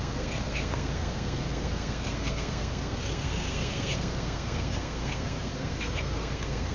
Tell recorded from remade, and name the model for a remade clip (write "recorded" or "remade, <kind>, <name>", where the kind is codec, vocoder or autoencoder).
remade, codec, SNAC